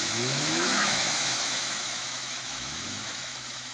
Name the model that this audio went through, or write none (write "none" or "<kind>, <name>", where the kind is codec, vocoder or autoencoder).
autoencoder, DAC-VAE